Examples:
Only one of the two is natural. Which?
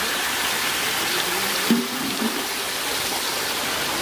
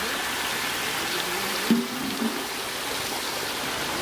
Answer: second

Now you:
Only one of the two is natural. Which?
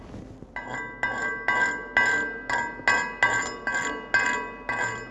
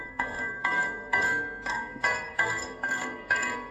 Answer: first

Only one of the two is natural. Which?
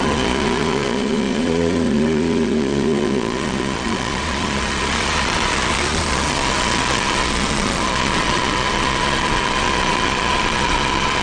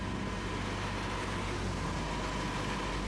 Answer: second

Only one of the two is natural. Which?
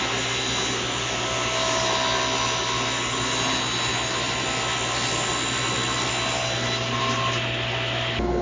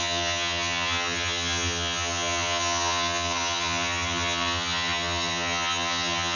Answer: first